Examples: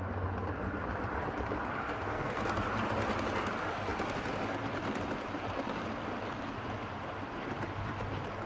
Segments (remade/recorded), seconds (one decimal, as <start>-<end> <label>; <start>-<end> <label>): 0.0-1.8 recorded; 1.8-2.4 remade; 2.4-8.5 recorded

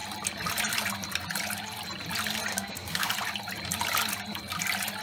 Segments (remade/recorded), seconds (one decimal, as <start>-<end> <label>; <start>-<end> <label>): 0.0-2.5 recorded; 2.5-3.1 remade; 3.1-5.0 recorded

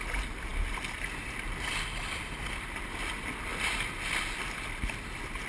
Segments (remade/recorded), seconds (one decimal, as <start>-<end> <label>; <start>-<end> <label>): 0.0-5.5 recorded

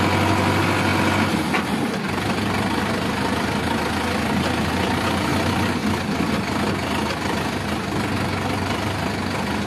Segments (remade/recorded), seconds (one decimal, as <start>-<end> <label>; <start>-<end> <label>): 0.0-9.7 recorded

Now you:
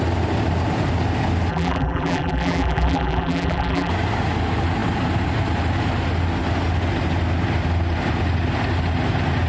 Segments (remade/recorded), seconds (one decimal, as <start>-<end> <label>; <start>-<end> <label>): 0.0-1.5 recorded; 1.5-3.9 remade; 3.9-9.5 recorded